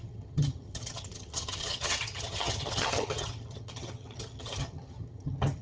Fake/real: fake